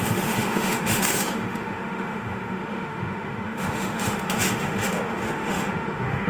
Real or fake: fake